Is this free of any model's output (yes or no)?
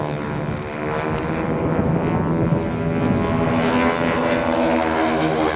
yes